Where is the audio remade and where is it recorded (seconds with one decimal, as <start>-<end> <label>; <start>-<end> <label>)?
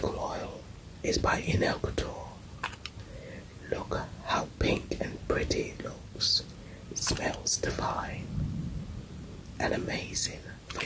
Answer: 0.0-10.9 recorded